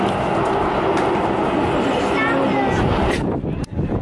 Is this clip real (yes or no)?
yes